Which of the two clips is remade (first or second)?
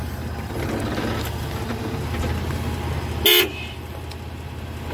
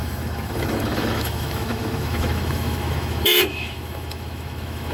second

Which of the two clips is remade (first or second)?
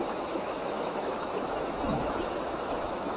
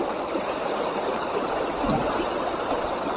first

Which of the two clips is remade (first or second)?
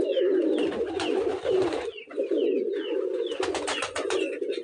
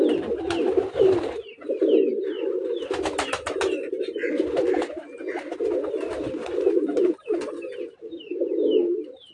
first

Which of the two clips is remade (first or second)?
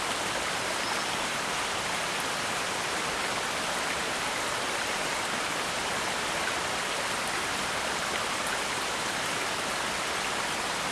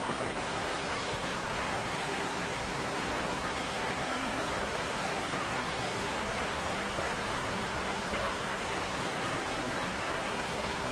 second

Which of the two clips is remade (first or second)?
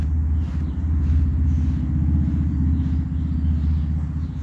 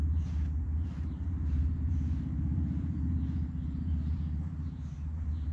second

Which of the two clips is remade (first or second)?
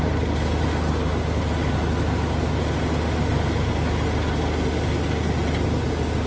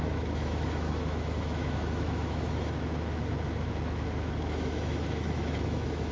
second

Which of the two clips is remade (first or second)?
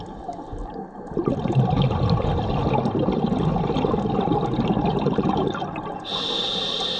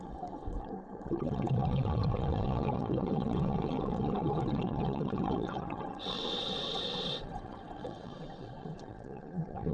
second